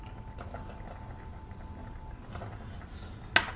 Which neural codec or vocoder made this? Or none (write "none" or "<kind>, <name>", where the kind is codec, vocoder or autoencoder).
none